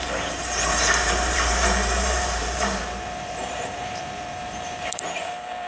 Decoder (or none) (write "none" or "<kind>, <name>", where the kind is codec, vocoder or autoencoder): vocoder, BigVGAN v2